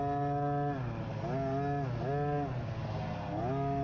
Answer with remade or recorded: recorded